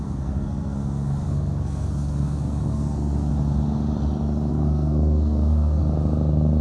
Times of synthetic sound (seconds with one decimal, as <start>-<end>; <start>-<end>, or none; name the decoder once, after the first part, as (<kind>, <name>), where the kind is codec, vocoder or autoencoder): 0.0-3.3 (codec, SNAC); 4.5-5.8